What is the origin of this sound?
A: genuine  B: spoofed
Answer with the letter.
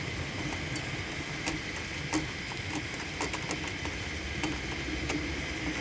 A